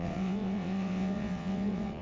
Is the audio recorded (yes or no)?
no